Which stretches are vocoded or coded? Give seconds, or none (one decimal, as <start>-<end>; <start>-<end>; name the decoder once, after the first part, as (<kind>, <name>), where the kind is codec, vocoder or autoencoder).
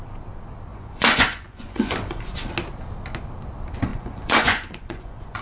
0.7-2.5 (vocoder, Vocos); 3.9-5.4